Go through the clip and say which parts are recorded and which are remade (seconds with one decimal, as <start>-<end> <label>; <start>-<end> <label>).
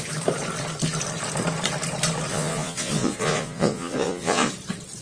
0.0-2.3 recorded; 2.3-4.5 remade; 4.5-5.0 recorded